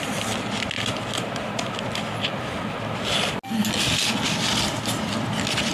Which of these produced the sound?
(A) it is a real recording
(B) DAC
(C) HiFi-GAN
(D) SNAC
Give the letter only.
A